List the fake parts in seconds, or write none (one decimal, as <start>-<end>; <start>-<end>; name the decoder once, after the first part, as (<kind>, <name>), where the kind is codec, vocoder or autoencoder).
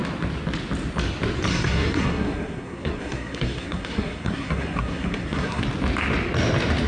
1.5-5.6 (codec, SNAC)